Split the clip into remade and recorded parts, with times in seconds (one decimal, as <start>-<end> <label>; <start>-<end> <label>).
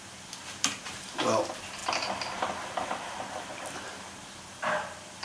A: 0.0-1.8 remade; 1.8-2.8 recorded; 2.8-5.2 remade